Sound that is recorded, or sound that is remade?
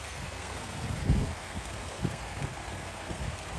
remade